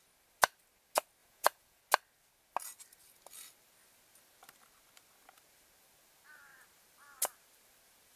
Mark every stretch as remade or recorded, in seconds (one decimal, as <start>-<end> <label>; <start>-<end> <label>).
0.0-1.2 recorded; 1.2-1.8 remade; 1.8-8.2 recorded